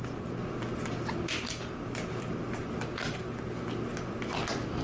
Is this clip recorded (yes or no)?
yes